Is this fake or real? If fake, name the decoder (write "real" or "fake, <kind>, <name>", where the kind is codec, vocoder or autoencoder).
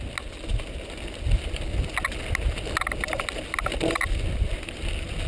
real